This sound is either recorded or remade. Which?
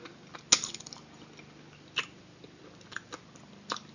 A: recorded